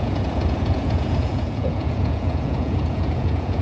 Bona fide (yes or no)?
no